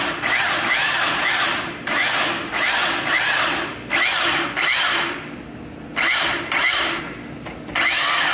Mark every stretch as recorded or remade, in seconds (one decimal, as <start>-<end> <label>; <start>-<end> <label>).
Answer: 0.0-8.3 recorded